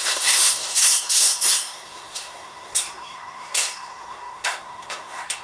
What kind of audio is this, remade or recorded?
remade